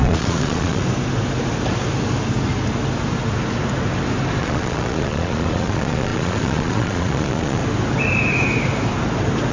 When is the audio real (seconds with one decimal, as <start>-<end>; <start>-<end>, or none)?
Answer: 0.8-4.4; 7.6-9.5